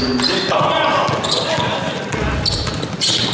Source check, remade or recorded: recorded